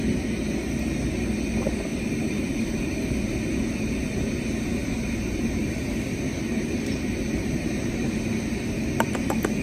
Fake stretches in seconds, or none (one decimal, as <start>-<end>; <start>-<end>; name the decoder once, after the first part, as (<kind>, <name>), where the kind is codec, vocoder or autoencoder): 1.9-2.9 (vocoder, BigVGAN v2); 4.8-5.9; 6.5-8.0